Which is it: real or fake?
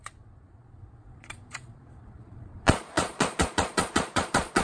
fake